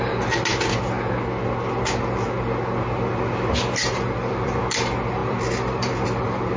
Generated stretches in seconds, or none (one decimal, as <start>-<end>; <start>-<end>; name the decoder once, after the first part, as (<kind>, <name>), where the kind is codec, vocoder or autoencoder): 3.8-4.6 (vocoder, BigVGAN v2); 5.2-6.6